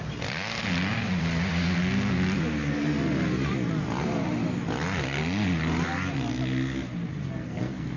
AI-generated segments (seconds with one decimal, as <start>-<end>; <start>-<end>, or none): 7.2-8.0